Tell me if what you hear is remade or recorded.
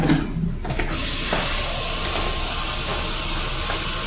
recorded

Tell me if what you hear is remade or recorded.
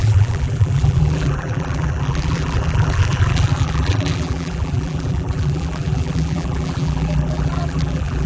remade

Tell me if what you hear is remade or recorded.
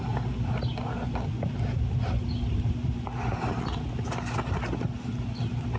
recorded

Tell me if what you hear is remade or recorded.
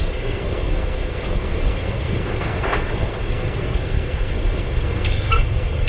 remade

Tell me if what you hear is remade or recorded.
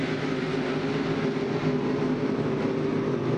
recorded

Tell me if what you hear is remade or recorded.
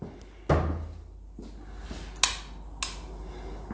recorded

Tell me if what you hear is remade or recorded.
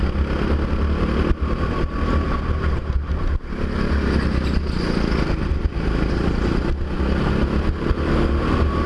recorded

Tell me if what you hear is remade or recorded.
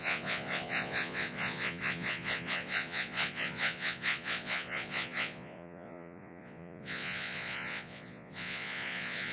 remade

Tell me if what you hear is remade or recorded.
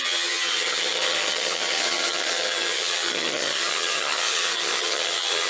remade